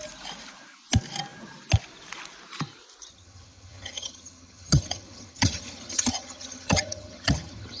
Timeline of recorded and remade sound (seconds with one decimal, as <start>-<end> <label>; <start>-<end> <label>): 0.0-3.1 recorded; 3.1-7.8 remade